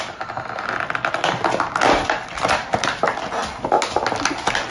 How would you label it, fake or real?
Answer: real